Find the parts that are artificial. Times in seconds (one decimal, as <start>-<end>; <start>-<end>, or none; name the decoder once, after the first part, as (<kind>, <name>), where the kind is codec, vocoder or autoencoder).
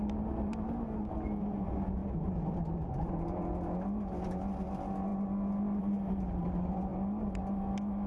none